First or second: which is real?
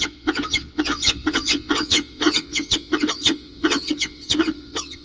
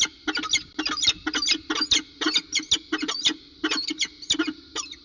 second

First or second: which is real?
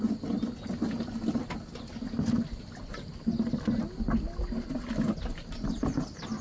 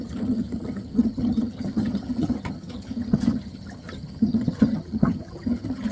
first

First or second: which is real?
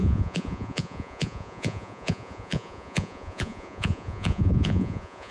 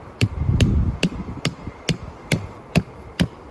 second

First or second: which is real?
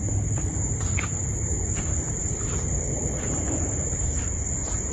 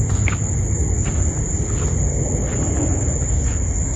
second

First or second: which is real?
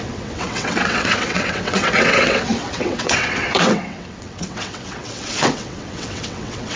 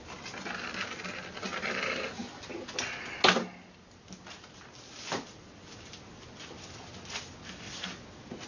second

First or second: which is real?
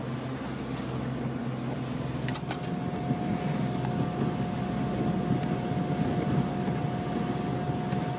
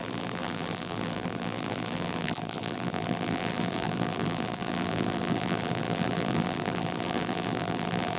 first